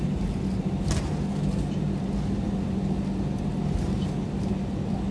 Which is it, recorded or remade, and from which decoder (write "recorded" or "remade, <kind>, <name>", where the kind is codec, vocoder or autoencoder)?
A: recorded